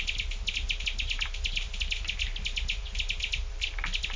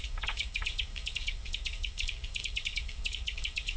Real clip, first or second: first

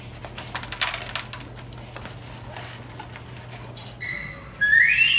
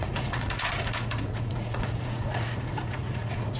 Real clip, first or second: first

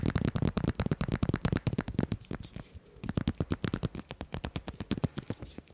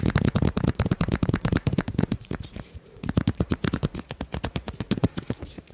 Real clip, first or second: first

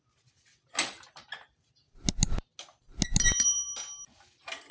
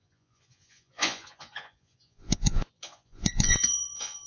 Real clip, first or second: first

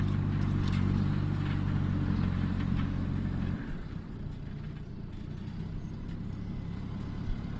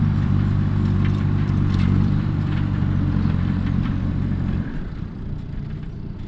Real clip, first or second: first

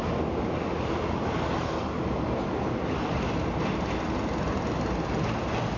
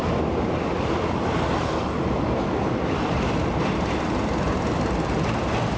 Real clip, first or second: first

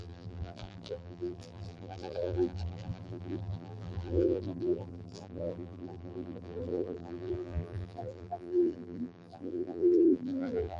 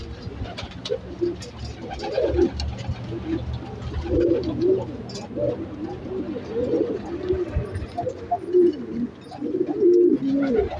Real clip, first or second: second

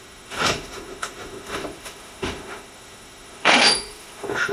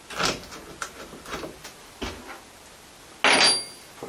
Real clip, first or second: second